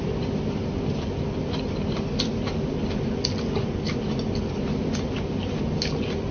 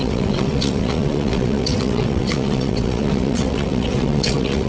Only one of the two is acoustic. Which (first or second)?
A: first